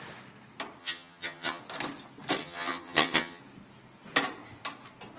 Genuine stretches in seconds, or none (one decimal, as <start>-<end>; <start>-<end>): 0.0-0.8; 1.6-2.4; 3.4-5.2